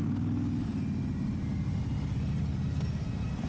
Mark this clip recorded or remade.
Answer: recorded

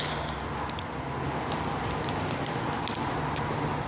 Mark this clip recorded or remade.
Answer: recorded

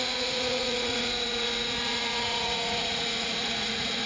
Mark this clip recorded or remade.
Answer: remade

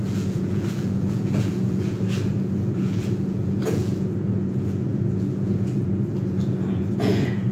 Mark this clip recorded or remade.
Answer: remade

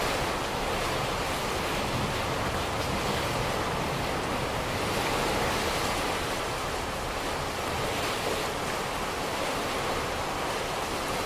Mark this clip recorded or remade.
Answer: recorded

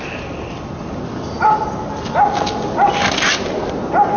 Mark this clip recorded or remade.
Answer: recorded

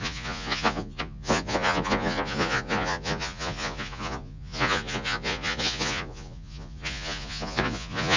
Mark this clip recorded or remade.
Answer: remade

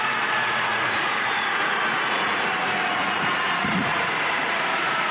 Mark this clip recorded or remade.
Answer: remade